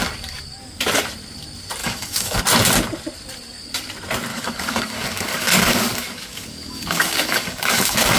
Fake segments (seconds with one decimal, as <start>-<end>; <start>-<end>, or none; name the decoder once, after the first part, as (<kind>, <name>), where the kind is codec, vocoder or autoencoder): 1.8-2.4 (codec, DAC); 4.3-8.2